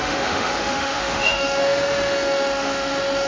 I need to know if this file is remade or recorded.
remade